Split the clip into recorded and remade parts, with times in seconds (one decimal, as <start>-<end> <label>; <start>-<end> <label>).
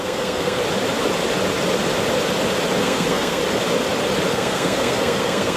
0.0-0.6 remade; 0.6-2.8 recorded; 2.8-3.4 remade; 3.4-4.3 recorded; 4.3-5.6 remade